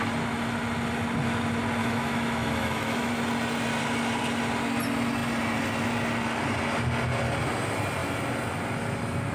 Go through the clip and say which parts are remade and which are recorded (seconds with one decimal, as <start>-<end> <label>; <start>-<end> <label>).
0.0-1.8 recorded; 1.8-3.1 remade; 3.1-9.3 recorded